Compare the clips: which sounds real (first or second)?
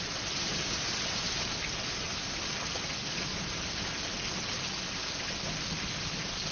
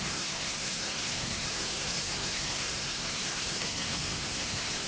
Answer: first